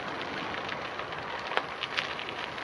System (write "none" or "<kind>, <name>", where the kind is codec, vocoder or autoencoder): none